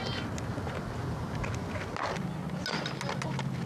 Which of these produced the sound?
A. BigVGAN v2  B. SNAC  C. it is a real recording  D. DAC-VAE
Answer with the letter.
C